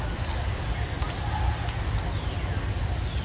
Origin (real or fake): real